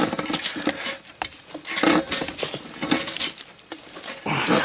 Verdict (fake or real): real